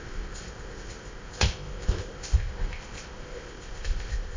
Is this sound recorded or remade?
remade